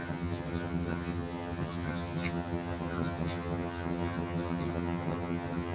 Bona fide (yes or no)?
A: no